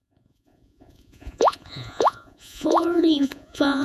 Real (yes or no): no